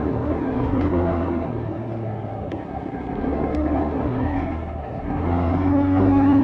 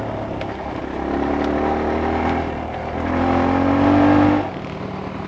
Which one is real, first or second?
second